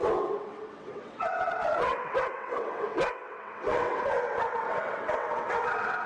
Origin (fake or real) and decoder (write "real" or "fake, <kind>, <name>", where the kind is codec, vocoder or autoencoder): fake, vocoder, WaveNeXt